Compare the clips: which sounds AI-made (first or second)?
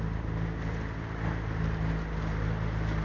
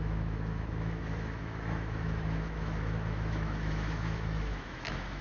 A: second